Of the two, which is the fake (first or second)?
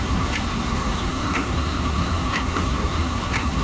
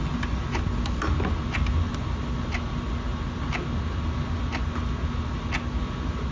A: first